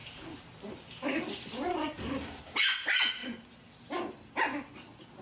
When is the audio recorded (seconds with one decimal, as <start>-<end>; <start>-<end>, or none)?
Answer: 2.4-3.2; 3.9-5.2